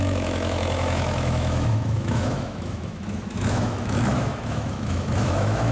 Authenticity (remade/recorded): remade